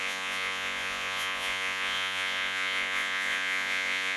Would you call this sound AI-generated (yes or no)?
yes